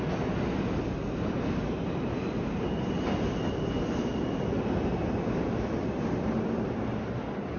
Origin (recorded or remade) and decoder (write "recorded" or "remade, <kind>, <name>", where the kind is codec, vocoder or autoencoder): recorded